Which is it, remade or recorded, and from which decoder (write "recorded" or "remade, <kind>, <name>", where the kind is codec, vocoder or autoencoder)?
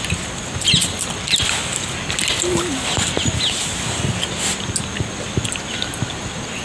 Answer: recorded